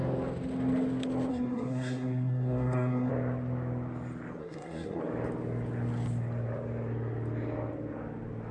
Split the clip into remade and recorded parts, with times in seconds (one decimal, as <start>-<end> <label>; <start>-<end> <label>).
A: 0.0-1.3 recorded; 1.3-3.1 remade; 3.1-4.4 recorded; 4.4-5.0 remade; 5.0-8.5 recorded